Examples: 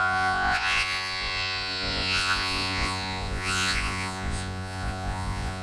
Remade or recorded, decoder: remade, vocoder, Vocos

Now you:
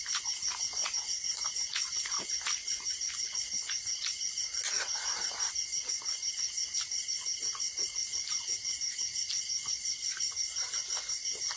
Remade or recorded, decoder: recorded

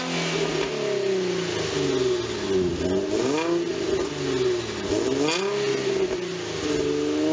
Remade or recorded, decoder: recorded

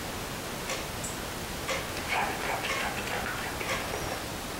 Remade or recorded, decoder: recorded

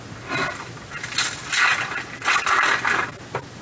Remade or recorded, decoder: recorded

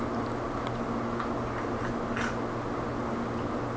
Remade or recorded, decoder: recorded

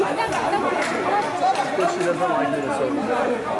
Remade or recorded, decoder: recorded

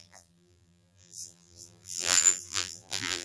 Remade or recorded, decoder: remade, vocoder, BigVGAN v2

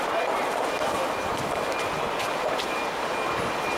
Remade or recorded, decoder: recorded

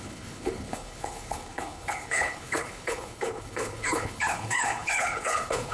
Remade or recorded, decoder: remade, codec, HILCodec